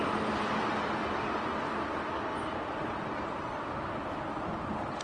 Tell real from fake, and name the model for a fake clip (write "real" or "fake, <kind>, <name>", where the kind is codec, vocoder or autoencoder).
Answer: real